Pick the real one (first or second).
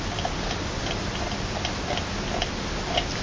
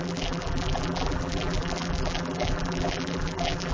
first